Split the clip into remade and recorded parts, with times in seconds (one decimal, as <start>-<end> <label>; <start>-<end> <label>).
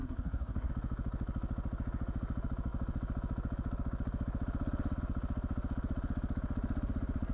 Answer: 0.0-0.7 remade; 0.7-7.3 recorded